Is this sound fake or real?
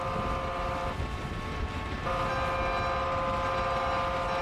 real